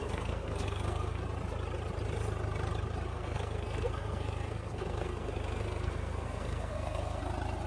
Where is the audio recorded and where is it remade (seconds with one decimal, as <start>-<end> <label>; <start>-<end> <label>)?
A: 0.0-1.2 remade; 1.2-3.1 recorded; 3.1-7.2 remade; 7.2-7.7 recorded